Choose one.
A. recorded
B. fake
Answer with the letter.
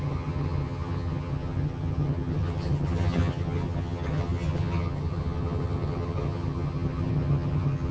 B